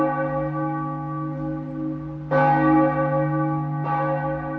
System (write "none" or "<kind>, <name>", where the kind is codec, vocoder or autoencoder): none